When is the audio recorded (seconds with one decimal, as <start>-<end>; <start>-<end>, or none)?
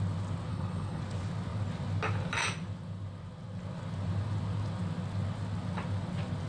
0.0-0.5; 1.0-6.5